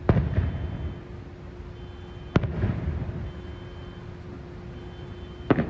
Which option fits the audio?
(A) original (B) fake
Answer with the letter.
A